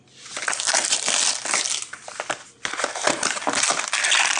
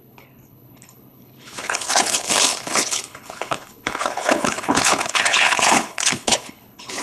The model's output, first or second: second